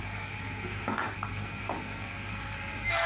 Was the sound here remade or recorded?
remade